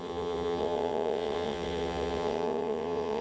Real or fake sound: fake